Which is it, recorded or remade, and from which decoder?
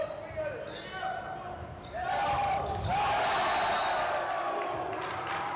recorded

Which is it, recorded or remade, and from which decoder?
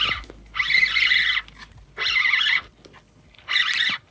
recorded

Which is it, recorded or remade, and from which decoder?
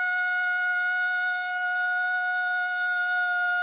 recorded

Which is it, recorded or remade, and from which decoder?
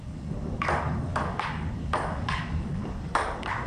remade, codec, DAC